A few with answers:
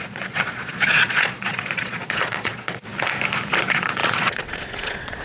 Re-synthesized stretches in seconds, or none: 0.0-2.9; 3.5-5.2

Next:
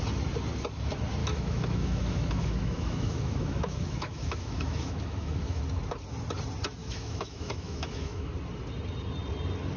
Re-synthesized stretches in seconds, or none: 1.2-5.6; 6.8-8.3